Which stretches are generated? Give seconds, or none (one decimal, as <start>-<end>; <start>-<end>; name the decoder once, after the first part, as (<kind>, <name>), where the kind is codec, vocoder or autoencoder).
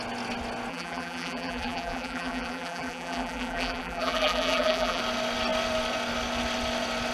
0.7-5.0 (vocoder, BigVGAN v2)